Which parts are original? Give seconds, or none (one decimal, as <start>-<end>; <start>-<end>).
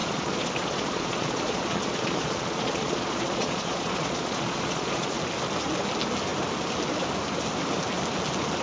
5.2-8.6